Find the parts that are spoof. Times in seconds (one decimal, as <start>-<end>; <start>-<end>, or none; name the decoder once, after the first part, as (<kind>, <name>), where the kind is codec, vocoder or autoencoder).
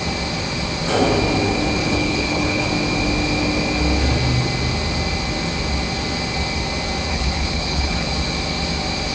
1.8-2.7 (codec, HILCodec); 7.1-8.1